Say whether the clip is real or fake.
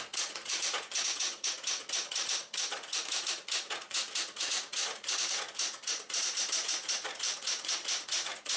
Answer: fake